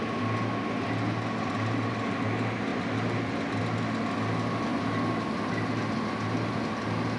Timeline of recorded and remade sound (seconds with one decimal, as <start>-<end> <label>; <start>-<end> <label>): 0.0-7.2 recorded